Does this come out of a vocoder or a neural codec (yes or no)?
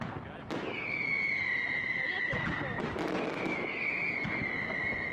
no